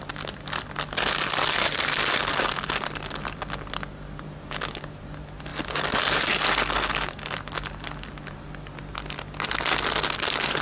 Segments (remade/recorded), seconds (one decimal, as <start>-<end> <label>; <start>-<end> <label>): 0.0-10.6 recorded